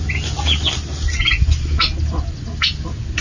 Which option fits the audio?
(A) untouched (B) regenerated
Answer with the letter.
A